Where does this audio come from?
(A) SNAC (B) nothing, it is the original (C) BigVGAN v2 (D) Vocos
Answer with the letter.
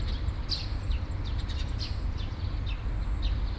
B